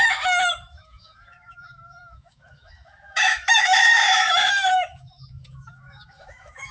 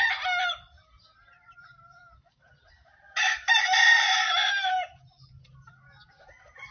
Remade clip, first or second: first